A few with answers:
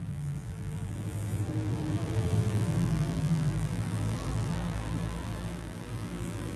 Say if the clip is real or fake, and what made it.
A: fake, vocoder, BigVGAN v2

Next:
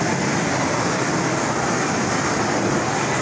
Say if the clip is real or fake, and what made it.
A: real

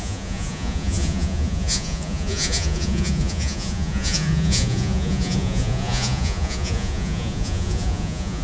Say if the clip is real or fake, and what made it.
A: fake, vocoder, Vocos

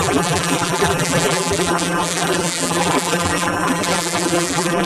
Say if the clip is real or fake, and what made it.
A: fake, vocoder, BigVGAN v2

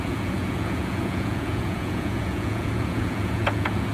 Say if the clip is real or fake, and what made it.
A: fake, vocoder, Vocos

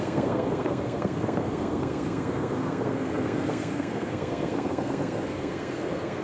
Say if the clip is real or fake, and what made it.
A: fake, codec, SNAC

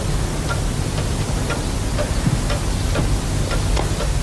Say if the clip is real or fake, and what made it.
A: real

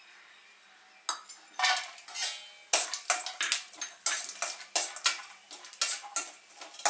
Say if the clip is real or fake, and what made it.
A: real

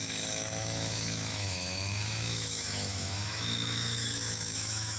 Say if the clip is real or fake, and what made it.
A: fake, autoencoder, DAC-VAE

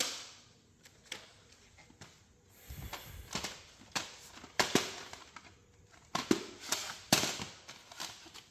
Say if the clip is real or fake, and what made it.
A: real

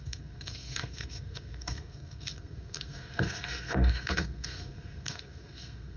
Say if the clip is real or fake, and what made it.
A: fake, codec, SNAC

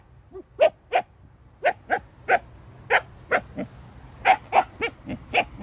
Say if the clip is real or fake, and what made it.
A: real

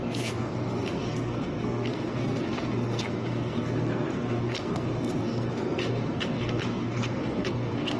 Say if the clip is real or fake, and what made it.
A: fake, codec, SNAC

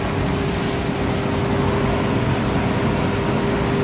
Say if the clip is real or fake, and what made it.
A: real